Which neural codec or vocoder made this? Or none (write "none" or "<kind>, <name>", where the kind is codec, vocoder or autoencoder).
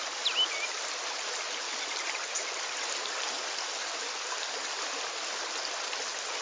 none